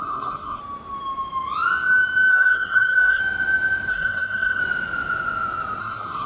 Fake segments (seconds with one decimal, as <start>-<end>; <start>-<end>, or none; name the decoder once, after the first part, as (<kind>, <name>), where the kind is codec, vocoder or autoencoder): 0.0-0.6 (codec, SNAC); 2.3-3.2; 3.9-4.6; 5.8-6.3